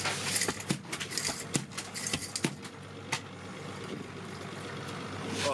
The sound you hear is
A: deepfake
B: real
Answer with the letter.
B